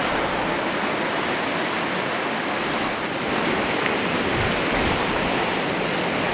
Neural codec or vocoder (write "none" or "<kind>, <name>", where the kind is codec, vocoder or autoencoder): none